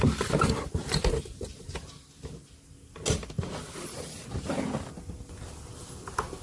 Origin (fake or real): real